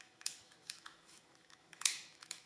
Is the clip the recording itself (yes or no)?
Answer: no